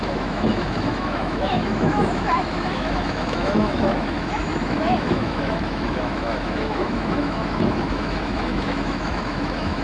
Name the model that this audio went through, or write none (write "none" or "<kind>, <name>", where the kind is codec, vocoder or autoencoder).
autoencoder, DAC-VAE